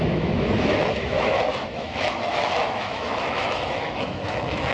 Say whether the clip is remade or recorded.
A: remade